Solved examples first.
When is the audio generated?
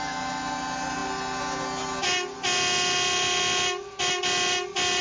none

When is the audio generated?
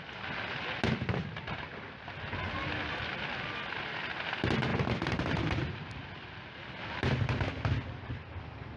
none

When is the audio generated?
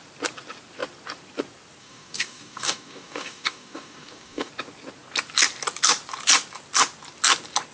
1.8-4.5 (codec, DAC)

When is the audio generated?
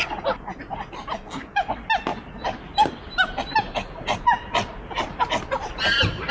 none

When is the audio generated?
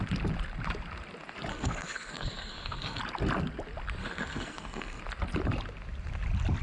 1.5-3.0 (codec, SNAC); 4.0-5.0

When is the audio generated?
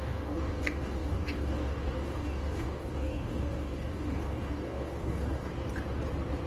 0.0-5.5 (codec, DAC)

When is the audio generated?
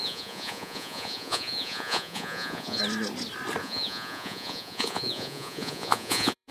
0.0-2.8 (vocoder, Vocos); 3.6-6.5